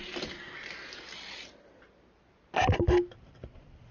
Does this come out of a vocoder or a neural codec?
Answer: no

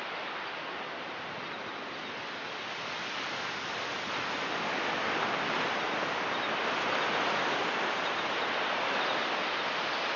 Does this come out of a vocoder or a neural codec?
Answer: no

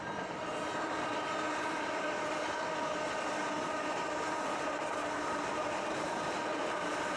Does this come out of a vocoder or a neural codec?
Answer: no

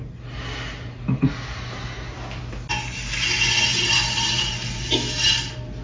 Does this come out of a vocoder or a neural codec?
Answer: no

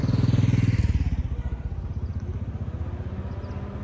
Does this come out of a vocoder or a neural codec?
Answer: no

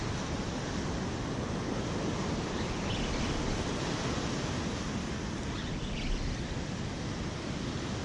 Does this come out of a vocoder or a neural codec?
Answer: no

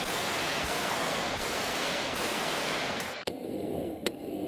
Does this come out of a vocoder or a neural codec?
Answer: yes